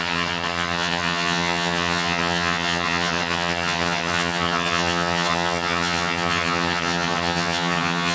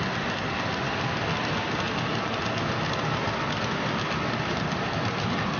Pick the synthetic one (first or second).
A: first